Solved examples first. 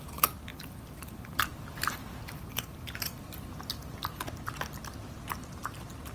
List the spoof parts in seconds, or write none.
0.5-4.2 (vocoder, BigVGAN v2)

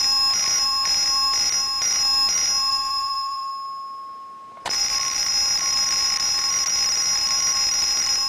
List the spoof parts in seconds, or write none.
2.7-3.5 (vocoder, BigVGAN v2); 4.6-5.3

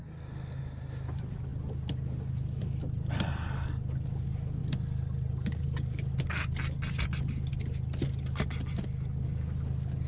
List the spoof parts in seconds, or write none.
none

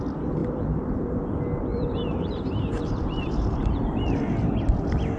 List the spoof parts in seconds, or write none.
0.4-1.2 (vocoder, BigVGAN v2); 1.7-4.6

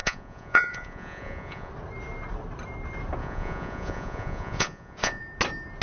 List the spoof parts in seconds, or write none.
0.0-1.7 (vocoder, Vocos); 3.2-5.2

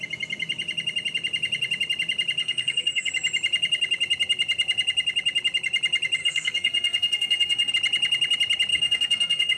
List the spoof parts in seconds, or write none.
2.4-3.1 (codec, SNAC); 6.2-7.7; 8.7-9.6